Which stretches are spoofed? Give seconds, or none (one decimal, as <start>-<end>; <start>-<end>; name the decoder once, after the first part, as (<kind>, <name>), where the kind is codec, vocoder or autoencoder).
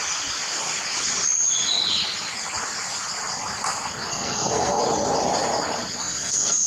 4.1-4.8 (codec, SNAC); 6.0-6.7